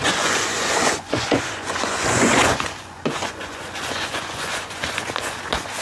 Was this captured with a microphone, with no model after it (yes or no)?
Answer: no